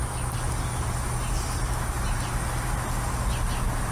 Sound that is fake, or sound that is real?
real